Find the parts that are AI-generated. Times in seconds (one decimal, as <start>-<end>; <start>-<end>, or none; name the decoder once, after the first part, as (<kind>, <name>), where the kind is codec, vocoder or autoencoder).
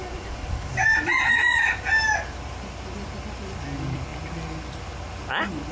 none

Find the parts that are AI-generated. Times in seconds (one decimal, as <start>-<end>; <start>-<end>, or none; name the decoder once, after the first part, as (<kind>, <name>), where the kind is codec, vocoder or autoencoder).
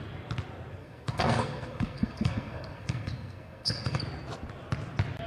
0.8-4.0 (codec, SNAC)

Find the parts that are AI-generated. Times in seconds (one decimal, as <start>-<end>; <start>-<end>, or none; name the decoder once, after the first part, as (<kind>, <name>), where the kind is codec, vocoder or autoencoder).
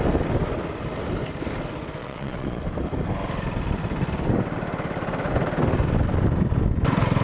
2.0-2.6 (vocoder, Vocos)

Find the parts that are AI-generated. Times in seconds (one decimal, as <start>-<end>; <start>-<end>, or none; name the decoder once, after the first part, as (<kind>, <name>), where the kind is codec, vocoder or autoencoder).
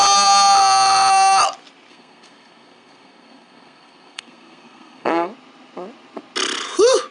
1.9-5.3 (codec, SNAC)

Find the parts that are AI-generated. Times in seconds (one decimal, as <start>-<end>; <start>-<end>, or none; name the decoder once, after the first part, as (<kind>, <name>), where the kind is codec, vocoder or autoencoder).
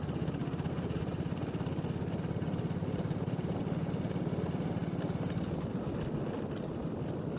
0.4-1.4 (vocoder, BigVGAN v2); 2.8-3.6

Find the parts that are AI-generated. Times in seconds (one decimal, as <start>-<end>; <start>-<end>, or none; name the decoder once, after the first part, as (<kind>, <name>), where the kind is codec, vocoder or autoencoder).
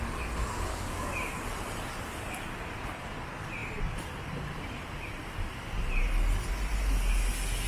0.7-1.3 (codec, DAC)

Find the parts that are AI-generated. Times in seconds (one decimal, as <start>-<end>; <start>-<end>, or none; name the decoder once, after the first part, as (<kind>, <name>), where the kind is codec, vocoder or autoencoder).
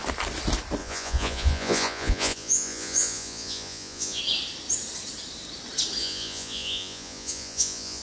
0.8-4.2 (vocoder, Vocos); 6.0-8.0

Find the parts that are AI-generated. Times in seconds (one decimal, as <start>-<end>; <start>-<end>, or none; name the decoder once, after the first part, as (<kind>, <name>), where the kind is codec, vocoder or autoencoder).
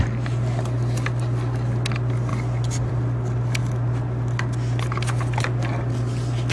none